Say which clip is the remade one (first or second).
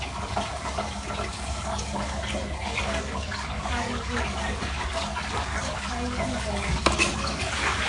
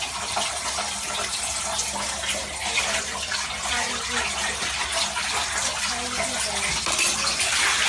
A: first